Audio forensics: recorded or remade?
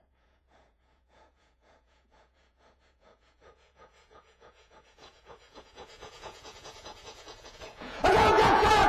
remade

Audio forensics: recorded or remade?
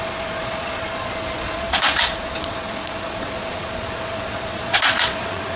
remade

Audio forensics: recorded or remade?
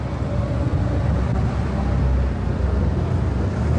recorded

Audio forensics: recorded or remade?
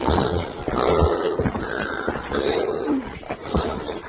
remade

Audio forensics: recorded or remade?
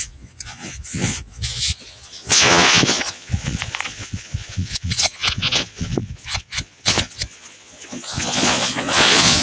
remade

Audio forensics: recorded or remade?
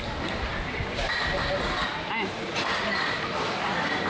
recorded